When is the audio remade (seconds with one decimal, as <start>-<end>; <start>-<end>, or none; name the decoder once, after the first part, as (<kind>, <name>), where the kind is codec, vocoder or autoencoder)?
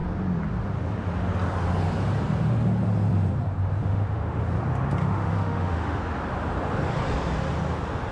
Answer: 3.8-4.4 (autoencoder, DAC-VAE); 5.0-6.0